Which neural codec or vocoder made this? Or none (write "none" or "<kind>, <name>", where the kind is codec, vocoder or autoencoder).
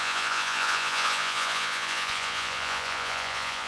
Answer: vocoder, Vocos